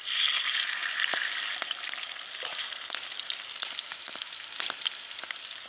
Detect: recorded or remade recorded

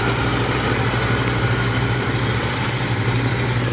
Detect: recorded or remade remade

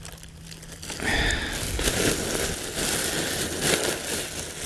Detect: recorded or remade recorded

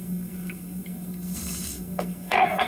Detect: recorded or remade remade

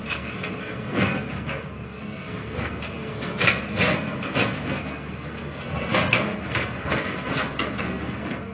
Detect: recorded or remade remade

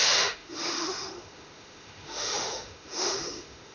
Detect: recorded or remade remade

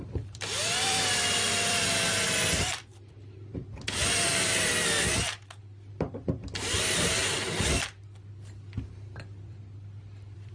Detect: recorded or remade remade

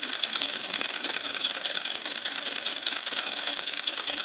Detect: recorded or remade remade